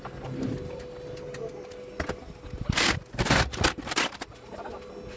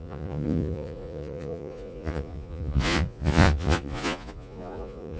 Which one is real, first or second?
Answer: first